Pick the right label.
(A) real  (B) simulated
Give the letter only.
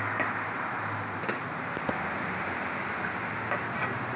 A